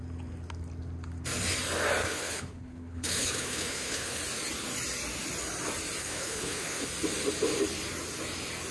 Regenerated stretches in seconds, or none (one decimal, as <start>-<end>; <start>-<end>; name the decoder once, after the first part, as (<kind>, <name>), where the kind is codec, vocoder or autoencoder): 2.0-4.2 (codec, HILCodec); 6.0-6.8